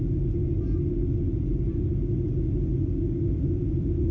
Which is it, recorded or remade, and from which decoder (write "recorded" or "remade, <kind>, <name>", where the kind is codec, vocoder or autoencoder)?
recorded